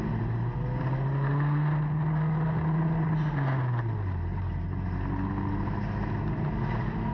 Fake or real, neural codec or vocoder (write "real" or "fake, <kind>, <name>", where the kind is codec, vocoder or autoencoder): real